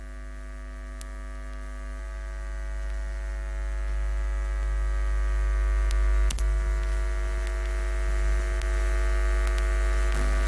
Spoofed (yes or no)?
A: no